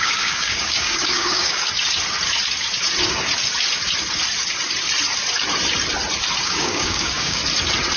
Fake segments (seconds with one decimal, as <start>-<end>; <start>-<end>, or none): 0.0-1.6; 6.4-7.4